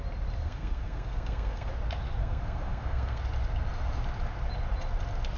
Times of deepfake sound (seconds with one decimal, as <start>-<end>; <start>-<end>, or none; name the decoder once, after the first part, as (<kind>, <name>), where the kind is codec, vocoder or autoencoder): 0.4-1.7 (codec, SNAC); 2.2-3.2